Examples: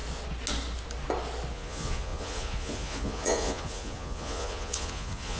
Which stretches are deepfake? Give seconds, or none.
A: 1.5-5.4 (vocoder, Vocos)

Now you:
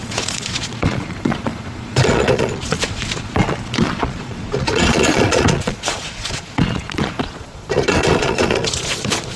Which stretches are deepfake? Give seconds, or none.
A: 0.0-9.4 (vocoder, Vocos)